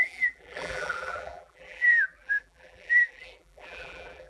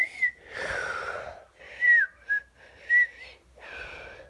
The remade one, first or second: first